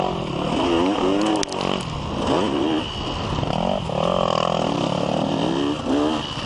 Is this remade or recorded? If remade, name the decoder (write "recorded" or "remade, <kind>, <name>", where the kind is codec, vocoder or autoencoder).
recorded